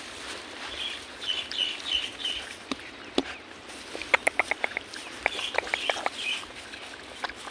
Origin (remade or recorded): recorded